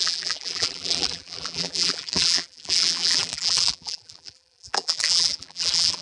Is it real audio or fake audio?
fake